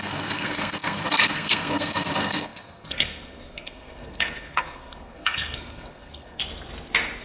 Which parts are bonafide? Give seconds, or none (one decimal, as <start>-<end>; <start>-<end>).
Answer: 6.4-7.2